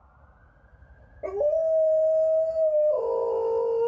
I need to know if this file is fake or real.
real